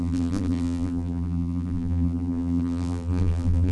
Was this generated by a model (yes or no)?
yes